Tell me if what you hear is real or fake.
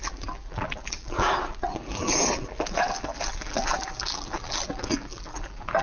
fake